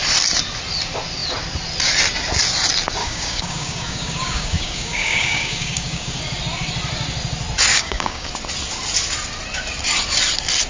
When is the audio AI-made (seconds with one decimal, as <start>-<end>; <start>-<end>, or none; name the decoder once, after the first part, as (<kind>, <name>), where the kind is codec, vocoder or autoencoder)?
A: 3.0-6.2 (codec, DAC); 7.7-8.3